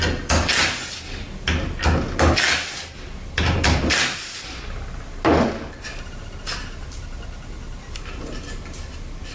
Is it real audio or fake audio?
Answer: real